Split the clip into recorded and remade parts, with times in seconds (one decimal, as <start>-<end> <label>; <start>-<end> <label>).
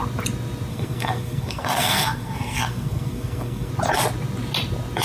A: 0.0-0.7 recorded; 0.7-3.7 remade; 3.7-5.0 recorded